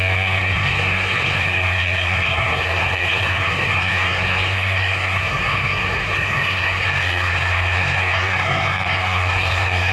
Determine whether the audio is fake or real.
fake